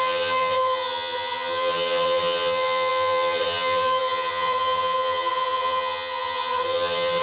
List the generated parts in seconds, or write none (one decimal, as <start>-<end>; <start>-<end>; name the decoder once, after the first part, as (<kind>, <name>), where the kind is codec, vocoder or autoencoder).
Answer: 0.0-7.2 (vocoder, HiFi-GAN)